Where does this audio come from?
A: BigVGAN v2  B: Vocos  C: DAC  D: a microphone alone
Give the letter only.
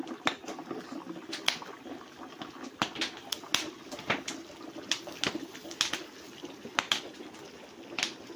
D